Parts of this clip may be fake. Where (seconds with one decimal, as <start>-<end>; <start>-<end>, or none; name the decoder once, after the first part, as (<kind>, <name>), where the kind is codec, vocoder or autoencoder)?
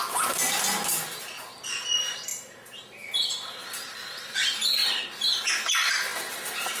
none